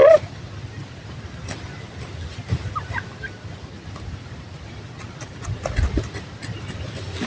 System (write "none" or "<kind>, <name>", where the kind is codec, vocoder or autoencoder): none